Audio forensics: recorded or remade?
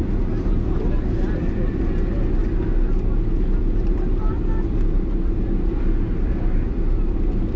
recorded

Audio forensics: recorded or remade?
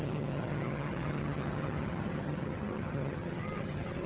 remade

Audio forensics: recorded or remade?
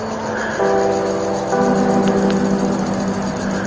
recorded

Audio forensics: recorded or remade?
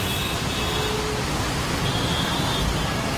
recorded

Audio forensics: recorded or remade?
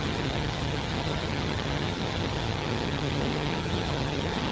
remade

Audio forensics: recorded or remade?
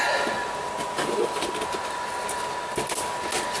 recorded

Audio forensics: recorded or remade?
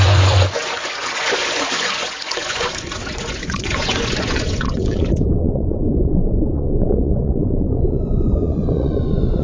remade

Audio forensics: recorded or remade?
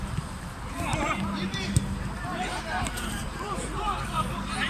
remade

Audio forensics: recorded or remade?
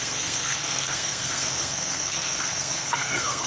remade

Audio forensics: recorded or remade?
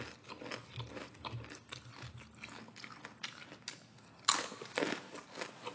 recorded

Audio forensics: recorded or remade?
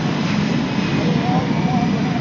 recorded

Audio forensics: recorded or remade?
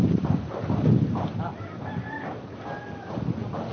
recorded